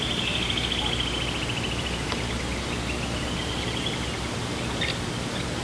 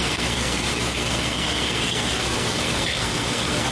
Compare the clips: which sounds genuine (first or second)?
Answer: first